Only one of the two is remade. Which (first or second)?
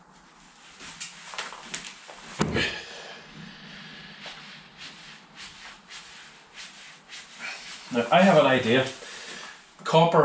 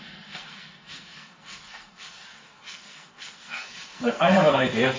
second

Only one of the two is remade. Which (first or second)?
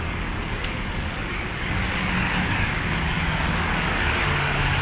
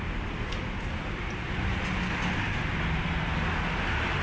first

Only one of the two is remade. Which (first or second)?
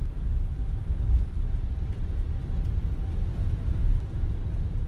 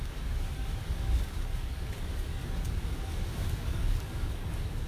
second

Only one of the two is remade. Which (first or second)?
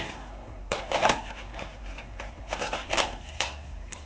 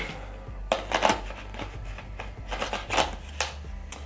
first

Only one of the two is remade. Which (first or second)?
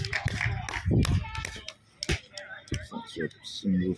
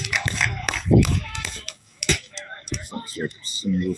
second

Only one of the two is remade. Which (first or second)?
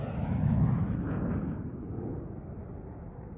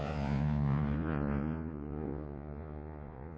second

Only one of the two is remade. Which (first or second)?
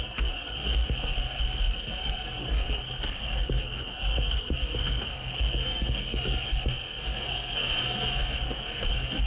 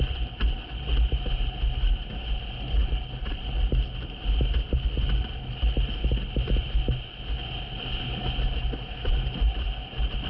first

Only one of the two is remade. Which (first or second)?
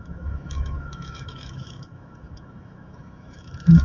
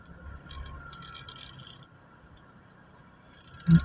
first